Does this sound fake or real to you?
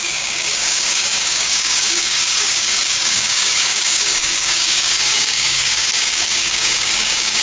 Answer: fake